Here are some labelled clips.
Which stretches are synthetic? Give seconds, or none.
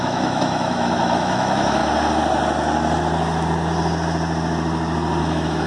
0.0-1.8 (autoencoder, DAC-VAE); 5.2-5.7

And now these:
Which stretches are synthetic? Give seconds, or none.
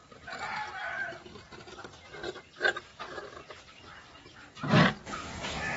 0.0-1.2 (vocoder, BigVGAN v2); 2.9-5.8